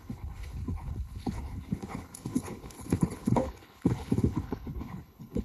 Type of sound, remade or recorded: remade